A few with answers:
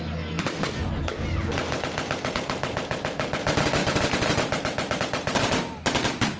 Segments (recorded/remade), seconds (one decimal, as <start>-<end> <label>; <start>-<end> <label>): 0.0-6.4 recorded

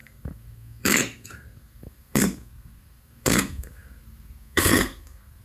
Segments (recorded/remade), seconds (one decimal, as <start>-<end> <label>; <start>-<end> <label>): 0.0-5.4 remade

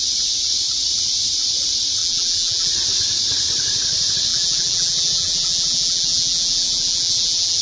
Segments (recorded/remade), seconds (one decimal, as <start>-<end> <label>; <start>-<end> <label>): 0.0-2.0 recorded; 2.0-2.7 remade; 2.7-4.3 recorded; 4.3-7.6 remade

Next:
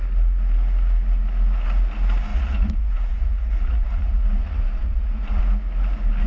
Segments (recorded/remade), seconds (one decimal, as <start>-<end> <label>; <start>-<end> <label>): 0.0-2.3 recorded; 2.3-5.4 remade; 5.4-6.3 recorded

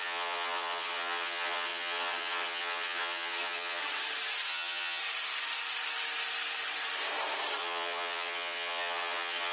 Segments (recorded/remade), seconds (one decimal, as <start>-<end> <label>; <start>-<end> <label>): 0.0-3.8 remade; 3.8-4.5 recorded; 4.5-5.0 remade; 5.0-7.6 recorded; 7.6-9.5 remade